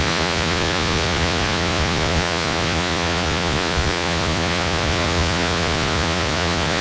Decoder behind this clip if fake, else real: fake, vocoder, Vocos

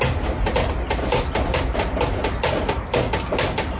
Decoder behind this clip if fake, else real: real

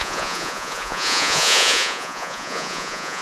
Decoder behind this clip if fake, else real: fake, vocoder, Vocos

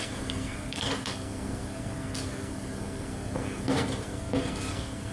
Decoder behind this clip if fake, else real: fake, codec, SNAC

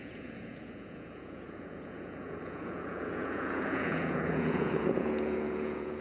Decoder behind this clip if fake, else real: fake, vocoder, Vocos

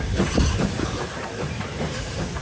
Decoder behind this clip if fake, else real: fake, vocoder, BigVGAN v2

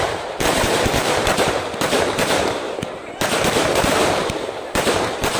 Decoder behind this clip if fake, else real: fake, vocoder, BigVGAN v2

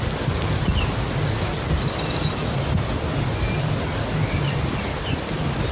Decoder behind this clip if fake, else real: real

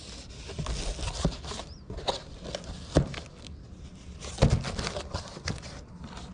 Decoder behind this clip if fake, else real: real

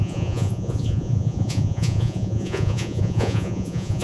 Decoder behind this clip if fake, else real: fake, vocoder, Vocos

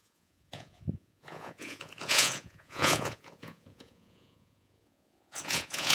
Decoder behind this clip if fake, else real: fake, vocoder, Vocos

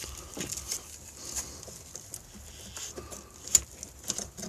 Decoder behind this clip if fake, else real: real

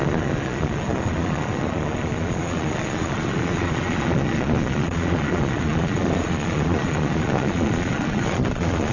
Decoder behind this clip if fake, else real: fake, vocoder, Vocos